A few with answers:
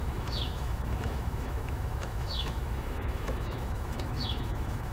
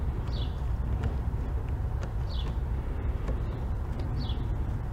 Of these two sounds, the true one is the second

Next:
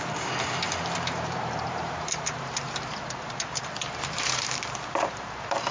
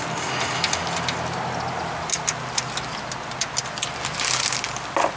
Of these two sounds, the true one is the second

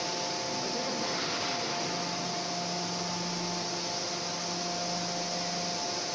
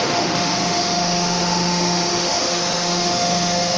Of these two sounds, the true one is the first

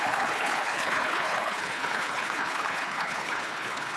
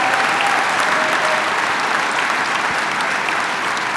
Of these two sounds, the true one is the second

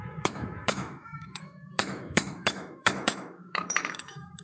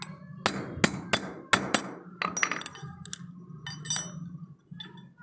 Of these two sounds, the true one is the second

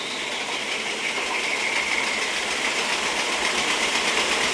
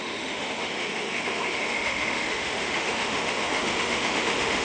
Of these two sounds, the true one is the first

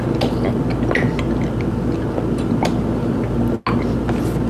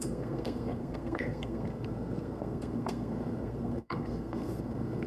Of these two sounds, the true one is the first